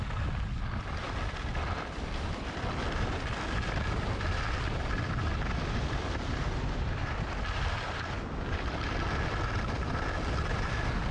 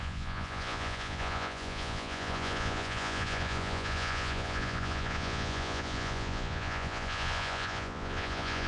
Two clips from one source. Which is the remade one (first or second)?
second